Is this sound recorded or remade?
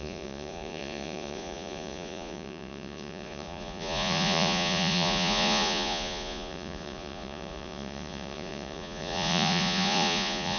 remade